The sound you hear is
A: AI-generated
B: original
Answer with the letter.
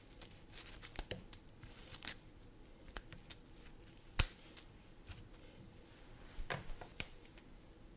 A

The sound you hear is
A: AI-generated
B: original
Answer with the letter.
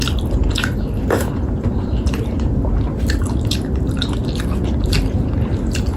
A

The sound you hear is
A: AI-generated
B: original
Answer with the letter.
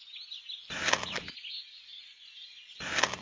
B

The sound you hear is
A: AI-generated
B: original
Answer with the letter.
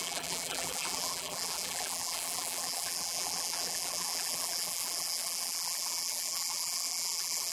A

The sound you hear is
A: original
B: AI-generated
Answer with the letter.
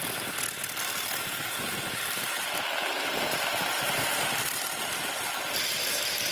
A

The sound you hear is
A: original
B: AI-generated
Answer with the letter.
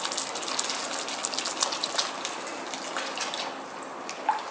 A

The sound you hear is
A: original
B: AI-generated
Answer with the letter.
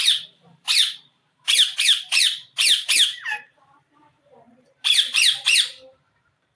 B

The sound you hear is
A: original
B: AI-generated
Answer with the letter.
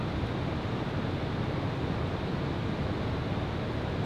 A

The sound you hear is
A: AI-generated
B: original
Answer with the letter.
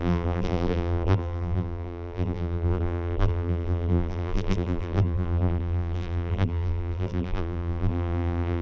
A